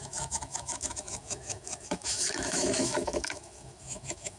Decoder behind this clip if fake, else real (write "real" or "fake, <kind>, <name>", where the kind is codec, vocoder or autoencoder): fake, autoencoder, DAC-VAE